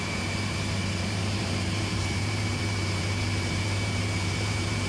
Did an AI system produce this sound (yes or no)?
yes